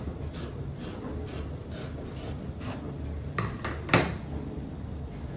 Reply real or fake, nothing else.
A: real